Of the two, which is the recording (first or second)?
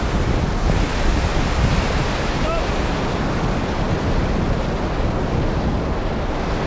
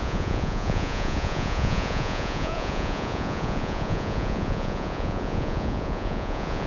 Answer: first